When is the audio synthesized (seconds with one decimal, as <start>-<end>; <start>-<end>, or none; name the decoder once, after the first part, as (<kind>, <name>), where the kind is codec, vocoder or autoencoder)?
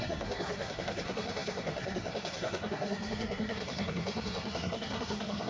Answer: 0.0-5.5 (codec, SNAC)